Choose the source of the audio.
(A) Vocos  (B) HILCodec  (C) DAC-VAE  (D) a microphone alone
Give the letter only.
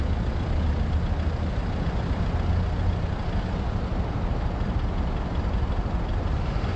D